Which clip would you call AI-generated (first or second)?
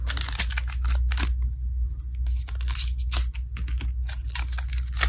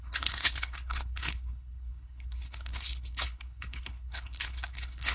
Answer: second